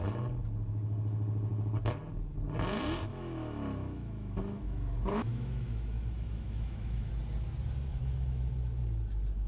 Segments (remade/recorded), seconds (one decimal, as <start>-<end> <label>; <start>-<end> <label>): 0.0-3.1 recorded; 3.1-7.1 remade; 7.1-7.9 recorded; 7.9-8.5 remade; 8.5-9.5 recorded